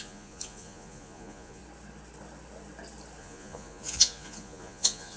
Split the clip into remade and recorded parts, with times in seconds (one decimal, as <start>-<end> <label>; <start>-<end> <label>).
0.0-1.6 remade; 1.6-3.2 recorded; 3.2-5.2 remade